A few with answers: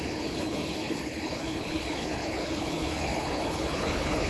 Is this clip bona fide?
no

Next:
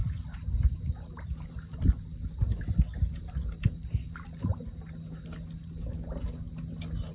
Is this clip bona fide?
yes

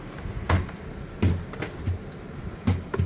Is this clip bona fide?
yes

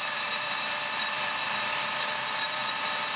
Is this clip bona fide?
no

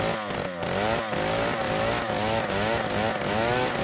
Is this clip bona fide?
yes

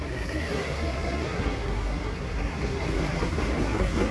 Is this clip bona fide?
no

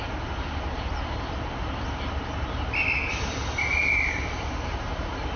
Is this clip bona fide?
yes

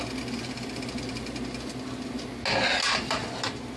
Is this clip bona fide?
yes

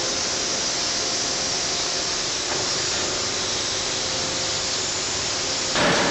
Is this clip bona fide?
yes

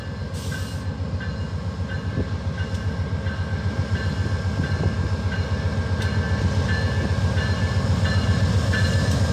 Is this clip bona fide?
yes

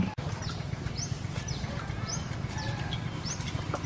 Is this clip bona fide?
yes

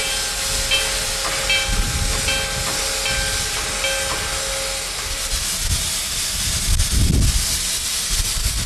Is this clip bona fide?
yes